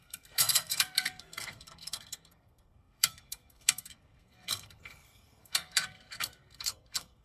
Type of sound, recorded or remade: remade